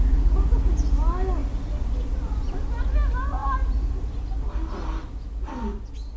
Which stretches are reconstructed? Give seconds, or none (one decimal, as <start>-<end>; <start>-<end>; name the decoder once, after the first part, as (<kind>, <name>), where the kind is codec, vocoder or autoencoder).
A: none